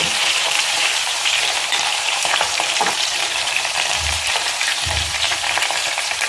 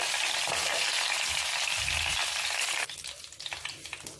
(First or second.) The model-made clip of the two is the first